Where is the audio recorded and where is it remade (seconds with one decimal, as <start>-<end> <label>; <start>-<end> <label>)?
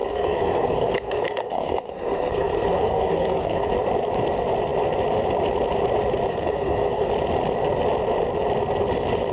0.0-3.7 remade; 3.7-6.3 recorded; 6.3-7.1 remade; 7.1-9.3 recorded